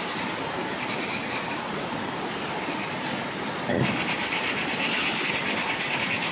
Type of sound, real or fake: real